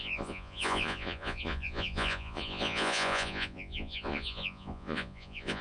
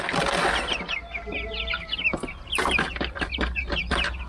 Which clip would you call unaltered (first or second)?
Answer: second